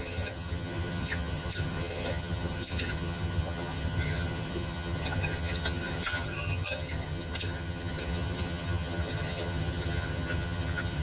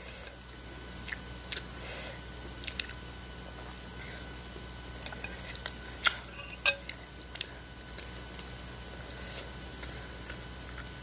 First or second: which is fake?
first